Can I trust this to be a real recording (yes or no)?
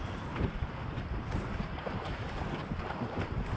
no